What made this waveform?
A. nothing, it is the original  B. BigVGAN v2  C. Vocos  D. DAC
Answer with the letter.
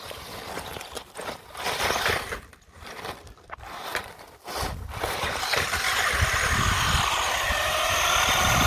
B